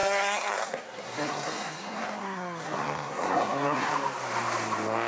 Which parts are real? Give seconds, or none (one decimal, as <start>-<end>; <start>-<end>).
3.9-5.1